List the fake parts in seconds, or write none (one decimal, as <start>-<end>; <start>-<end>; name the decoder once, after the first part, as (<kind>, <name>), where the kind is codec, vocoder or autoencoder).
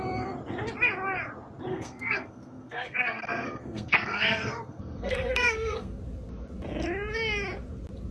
1.7-6.0 (codec, SNAC)